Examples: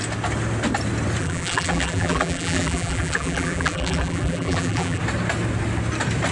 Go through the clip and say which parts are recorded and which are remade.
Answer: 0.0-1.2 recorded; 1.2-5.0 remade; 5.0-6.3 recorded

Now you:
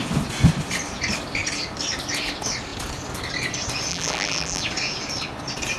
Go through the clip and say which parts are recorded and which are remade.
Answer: 0.0-3.9 recorded; 3.9-4.6 remade; 4.6-5.8 recorded

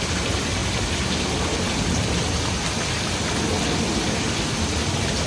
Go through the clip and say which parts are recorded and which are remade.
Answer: 0.0-0.6 remade; 0.6-3.8 recorded; 3.8-5.3 remade

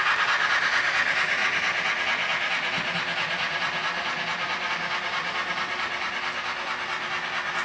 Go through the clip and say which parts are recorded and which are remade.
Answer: 0.0-7.6 recorded

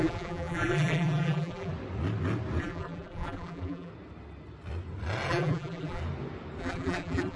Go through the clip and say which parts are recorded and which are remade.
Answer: 0.0-1.7 remade; 1.7-2.6 recorded; 2.6-3.9 remade; 3.9-5.3 recorded; 5.3-6.0 remade; 6.0-6.6 recorded; 6.6-7.4 remade

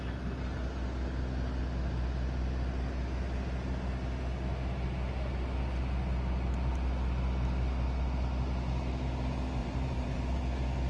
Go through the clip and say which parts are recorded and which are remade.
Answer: 0.0-9.6 recorded; 9.6-10.4 remade; 10.4-10.9 recorded

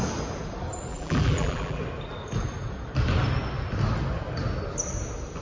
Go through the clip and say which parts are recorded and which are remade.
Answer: 0.0-0.9 recorded; 0.9-1.8 remade; 1.8-5.4 recorded

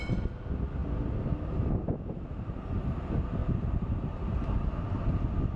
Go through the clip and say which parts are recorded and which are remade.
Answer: 0.0-3.4 recorded; 3.4-4.7 remade; 4.7-5.6 recorded